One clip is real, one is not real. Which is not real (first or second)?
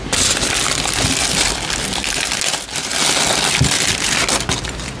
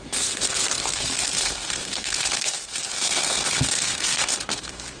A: second